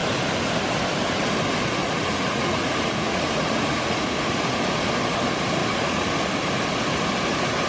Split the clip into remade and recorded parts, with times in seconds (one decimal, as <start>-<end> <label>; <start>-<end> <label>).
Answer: 0.0-1.8 recorded; 1.8-4.4 remade; 4.4-5.6 recorded; 5.6-6.1 remade; 6.1-7.7 recorded